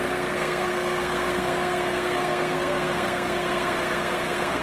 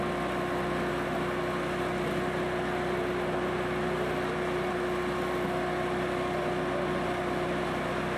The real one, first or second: second